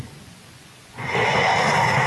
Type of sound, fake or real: fake